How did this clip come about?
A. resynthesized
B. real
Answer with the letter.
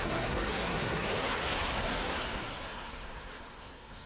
A